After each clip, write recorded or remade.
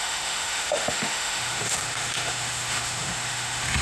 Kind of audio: remade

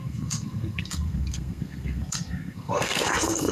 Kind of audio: remade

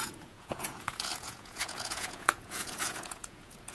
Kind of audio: remade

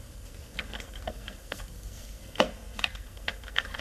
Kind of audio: remade